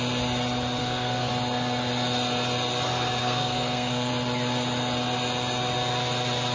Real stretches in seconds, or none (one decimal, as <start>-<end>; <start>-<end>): 0.0-0.8; 1.3-3.2; 4.1-6.5